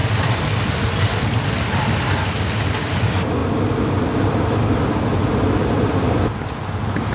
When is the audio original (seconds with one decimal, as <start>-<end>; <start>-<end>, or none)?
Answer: 0.0-7.1